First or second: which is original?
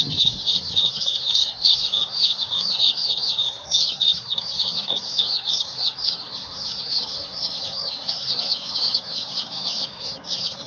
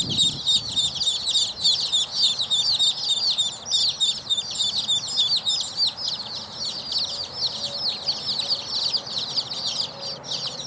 second